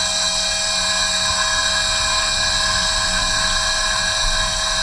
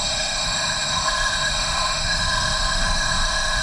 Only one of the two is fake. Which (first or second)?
second